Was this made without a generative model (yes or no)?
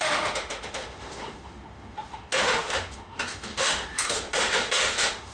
no